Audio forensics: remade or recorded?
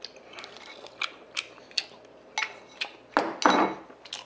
recorded